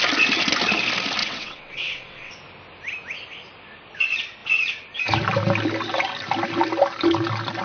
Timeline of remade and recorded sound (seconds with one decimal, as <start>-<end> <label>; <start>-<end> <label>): 0.0-1.2 recorded; 1.2-2.3 remade; 2.3-7.6 recorded